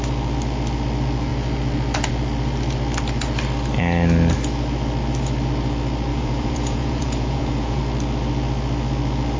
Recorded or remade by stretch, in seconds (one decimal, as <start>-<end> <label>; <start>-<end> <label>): 0.0-6.1 recorded; 6.1-7.8 remade; 7.8-9.4 recorded